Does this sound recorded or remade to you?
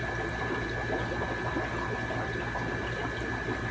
recorded